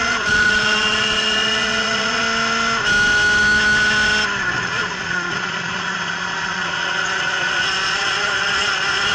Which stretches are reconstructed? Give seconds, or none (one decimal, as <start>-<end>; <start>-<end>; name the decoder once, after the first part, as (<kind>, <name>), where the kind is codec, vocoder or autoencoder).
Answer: 0.0-2.2 (vocoder, Vocos); 4.6-9.1